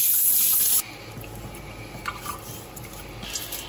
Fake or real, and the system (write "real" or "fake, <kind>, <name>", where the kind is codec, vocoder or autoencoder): real